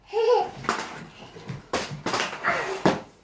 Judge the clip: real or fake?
real